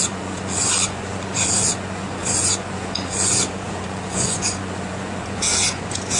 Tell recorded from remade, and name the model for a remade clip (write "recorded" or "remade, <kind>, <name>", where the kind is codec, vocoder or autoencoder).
remade, vocoder, Vocos